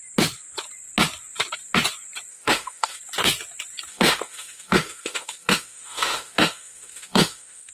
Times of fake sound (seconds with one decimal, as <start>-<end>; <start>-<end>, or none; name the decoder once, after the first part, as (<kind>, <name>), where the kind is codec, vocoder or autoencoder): 2.3-3.0 (autoencoder, DAC-VAE); 3.9-7.7